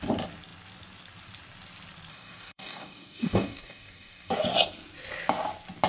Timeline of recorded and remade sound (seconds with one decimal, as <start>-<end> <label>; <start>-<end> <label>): 0.0-2.1 recorded; 2.1-4.3 remade; 4.3-5.9 recorded